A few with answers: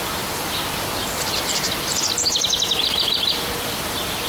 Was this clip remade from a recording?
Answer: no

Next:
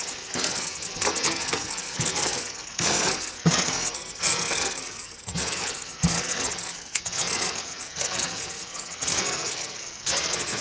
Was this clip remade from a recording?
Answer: yes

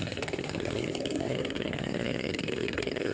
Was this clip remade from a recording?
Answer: yes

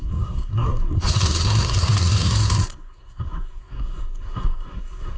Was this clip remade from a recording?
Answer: yes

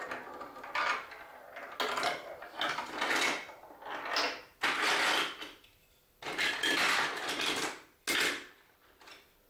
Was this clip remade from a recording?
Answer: no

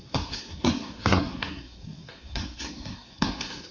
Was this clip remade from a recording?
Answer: yes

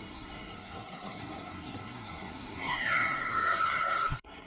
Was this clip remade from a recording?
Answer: yes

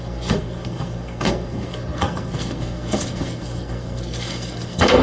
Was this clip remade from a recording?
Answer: yes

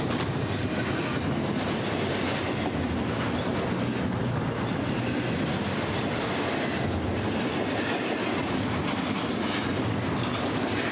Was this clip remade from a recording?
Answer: no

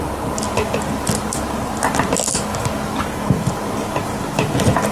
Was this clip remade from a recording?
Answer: no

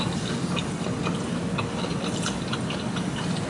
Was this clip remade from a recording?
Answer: no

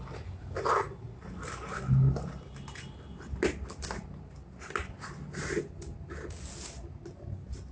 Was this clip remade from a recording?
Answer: no